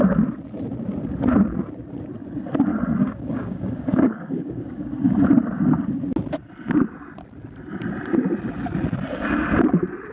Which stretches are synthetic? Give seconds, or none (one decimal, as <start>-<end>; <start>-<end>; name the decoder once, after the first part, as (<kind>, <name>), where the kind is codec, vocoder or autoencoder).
2.7-5.0 (codec, DAC)